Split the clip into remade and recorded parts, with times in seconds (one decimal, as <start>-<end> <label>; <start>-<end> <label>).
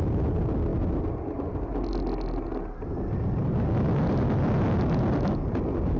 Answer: 0.0-6.0 recorded